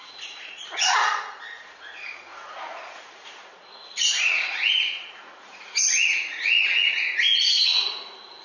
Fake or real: fake